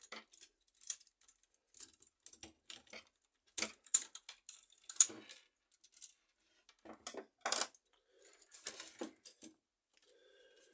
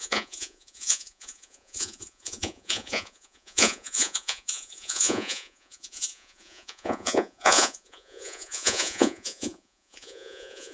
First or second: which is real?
first